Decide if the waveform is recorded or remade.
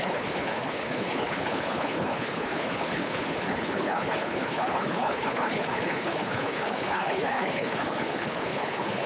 remade